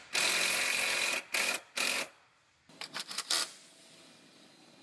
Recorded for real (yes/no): yes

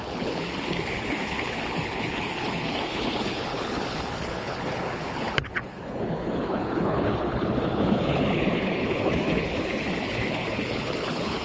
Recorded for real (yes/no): no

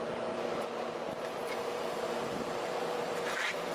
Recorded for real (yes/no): no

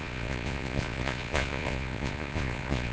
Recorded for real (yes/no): no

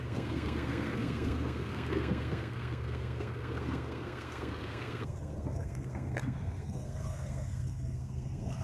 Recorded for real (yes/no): no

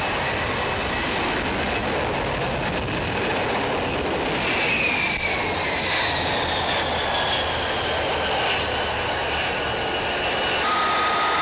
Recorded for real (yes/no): yes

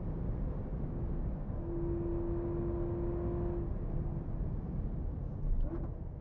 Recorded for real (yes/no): yes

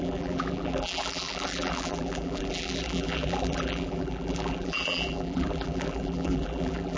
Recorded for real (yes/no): no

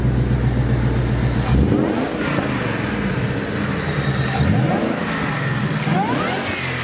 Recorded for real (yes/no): yes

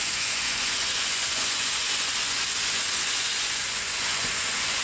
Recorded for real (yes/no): no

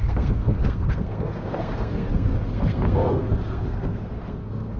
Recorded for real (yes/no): no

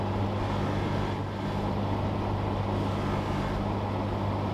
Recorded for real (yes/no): yes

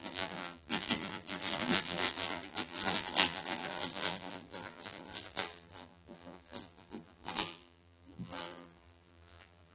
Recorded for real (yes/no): no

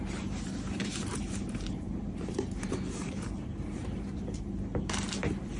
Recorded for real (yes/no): no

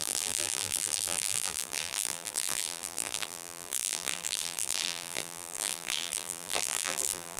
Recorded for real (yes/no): no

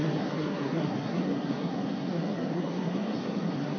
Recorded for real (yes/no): no